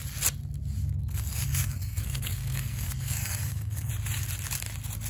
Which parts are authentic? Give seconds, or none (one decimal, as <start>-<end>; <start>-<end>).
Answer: 0.0-0.8; 3.9-5.1